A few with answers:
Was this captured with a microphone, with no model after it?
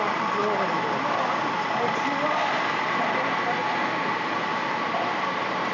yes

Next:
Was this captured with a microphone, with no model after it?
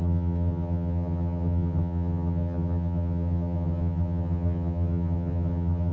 no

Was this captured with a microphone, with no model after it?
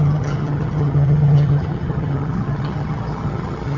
no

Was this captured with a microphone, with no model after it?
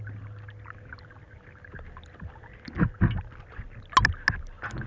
yes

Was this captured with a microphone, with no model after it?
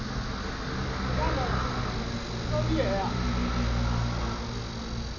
yes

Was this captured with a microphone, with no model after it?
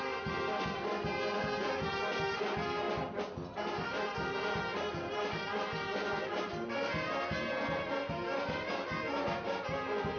yes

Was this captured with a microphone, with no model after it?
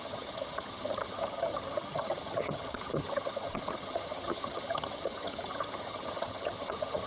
no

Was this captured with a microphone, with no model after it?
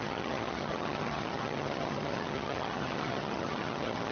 no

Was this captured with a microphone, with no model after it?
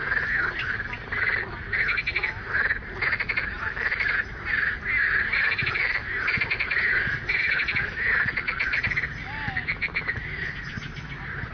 yes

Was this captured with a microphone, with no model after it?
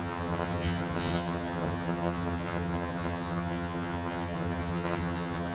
no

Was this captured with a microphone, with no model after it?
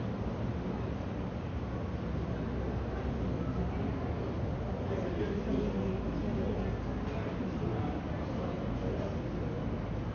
yes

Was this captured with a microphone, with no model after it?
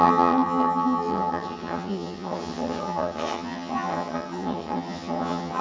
no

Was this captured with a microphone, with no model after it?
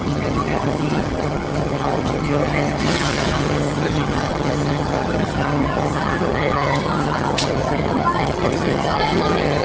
no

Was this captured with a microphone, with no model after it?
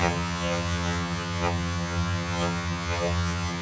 no